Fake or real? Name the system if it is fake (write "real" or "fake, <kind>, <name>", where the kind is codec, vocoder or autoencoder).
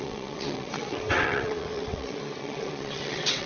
fake, vocoder, WaveNeXt